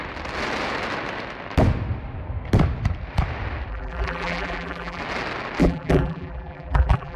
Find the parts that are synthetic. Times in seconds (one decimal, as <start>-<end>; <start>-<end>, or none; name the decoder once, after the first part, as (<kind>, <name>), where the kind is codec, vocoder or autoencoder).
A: 3.7-5.0 (vocoder, BigVGAN v2); 5.6-7.2